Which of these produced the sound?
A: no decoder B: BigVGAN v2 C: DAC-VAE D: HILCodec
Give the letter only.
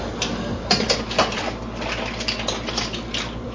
B